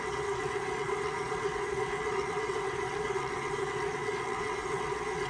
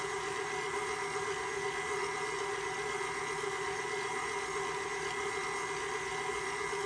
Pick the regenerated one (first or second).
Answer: first